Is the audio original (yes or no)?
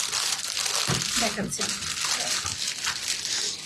yes